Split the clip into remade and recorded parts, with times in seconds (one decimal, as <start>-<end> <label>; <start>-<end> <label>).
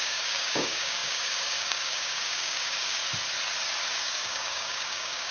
0.0-3.0 remade; 3.0-3.9 recorded; 3.9-5.3 remade